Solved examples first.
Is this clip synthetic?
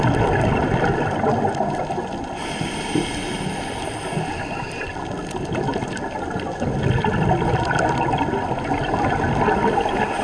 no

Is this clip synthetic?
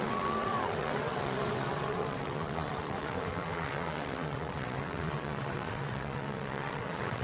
yes